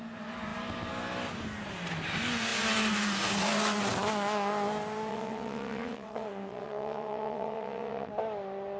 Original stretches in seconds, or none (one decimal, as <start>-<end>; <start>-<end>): 0.0-5.1; 8.1-8.8

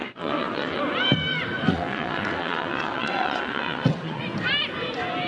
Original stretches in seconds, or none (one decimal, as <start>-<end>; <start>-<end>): 0.8-1.7; 4.2-5.3

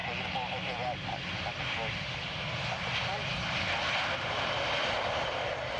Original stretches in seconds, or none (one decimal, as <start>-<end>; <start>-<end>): 0.0-5.8

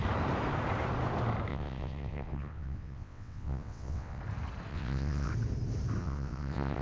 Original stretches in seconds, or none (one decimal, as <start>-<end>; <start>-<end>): 0.0-1.5; 4.2-4.7; 5.3-6.0